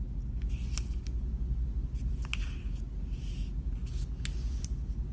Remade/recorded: recorded